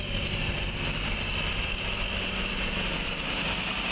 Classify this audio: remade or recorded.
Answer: recorded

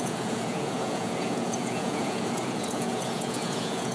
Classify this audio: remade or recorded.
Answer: remade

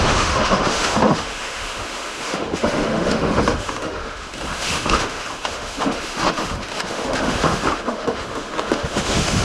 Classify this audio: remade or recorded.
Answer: remade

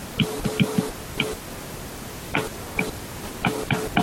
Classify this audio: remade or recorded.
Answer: recorded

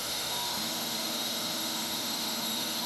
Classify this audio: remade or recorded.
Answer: remade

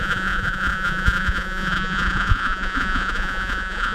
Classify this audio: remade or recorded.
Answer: remade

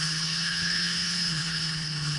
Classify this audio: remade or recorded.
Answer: remade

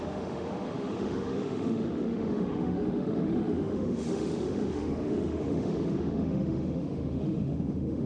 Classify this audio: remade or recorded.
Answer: remade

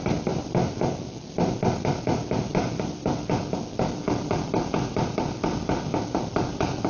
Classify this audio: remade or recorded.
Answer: recorded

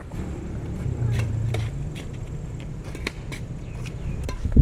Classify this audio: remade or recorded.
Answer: remade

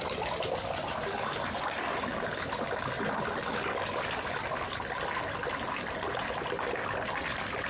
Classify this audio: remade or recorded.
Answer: recorded